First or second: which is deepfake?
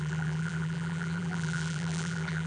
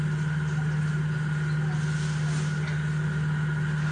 first